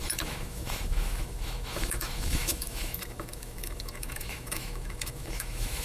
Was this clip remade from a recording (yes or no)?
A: yes